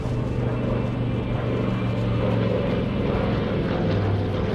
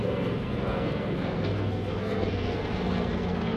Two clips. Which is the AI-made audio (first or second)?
second